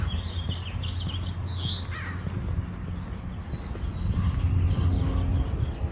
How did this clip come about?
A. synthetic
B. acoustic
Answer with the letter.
B